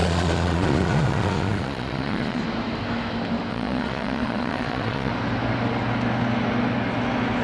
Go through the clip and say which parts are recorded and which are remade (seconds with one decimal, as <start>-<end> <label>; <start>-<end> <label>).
0.0-2.4 remade; 2.4-3.5 recorded; 3.5-5.1 remade; 5.1-7.4 recorded